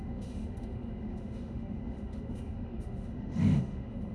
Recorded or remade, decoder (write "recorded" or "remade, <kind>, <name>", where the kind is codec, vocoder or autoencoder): remade, autoencoder, DAC-VAE